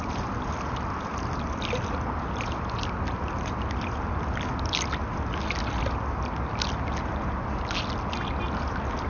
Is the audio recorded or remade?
recorded